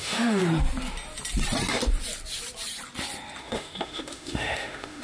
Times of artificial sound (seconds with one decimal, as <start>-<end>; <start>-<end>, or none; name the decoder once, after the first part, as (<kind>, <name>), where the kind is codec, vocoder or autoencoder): 0.0-0.4 (autoencoder, DAC-VAE); 3.4-5.0